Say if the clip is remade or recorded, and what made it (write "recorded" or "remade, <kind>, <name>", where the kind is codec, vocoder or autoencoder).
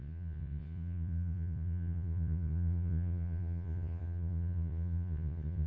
remade, vocoder, Vocos